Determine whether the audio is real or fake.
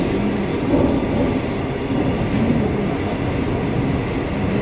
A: real